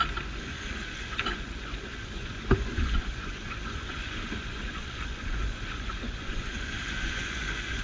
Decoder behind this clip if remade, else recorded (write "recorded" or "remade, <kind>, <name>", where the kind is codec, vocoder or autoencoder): remade, vocoder, Vocos